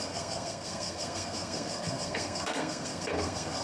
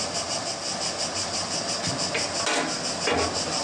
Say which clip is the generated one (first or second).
first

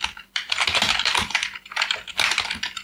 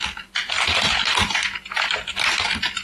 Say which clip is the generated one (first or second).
first